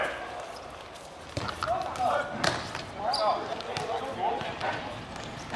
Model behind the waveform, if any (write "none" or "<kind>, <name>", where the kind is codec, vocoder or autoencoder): none